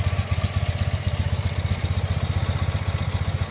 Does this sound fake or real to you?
real